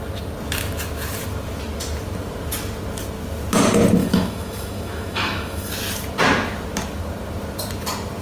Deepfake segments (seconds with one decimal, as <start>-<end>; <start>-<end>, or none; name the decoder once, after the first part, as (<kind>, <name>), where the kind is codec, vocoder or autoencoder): 4.0-5.7 (autoencoder, DAC-VAE)